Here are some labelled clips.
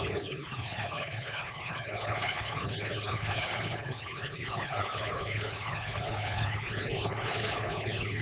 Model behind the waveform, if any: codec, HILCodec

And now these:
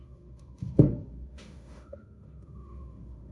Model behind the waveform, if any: autoencoder, DAC-VAE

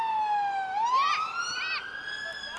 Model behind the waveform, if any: none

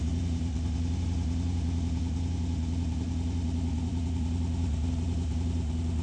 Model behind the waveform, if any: vocoder, BigVGAN v2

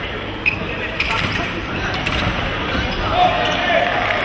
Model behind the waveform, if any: vocoder, BigVGAN v2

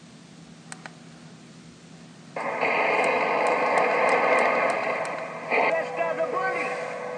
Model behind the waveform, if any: none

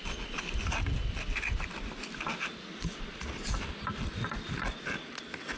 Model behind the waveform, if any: none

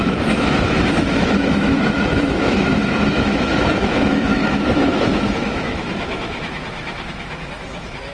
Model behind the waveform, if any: autoencoder, DAC-VAE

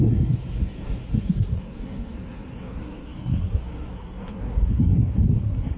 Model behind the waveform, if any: codec, SNAC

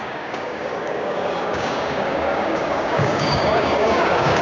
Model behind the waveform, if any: codec, DAC